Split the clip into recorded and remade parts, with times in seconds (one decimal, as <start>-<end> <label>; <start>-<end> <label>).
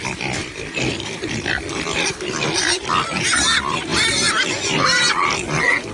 0.0-0.4 recorded; 0.4-2.8 remade; 2.8-3.9 recorded; 3.9-4.5 remade; 4.5-5.9 recorded